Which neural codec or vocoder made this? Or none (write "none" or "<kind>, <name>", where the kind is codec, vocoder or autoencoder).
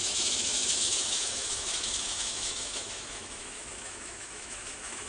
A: autoencoder, DAC-VAE